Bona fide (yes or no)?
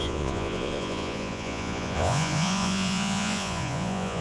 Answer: no